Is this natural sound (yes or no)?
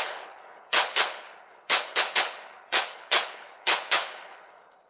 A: no